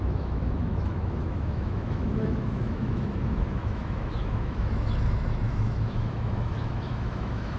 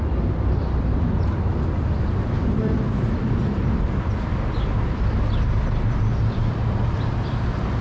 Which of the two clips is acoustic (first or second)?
second